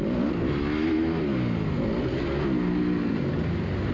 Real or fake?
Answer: real